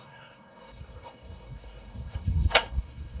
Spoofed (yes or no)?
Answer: yes